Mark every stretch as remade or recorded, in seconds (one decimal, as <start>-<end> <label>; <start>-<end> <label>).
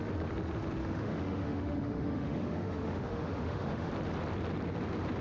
0.0-0.8 recorded; 0.8-3.9 remade; 3.9-5.2 recorded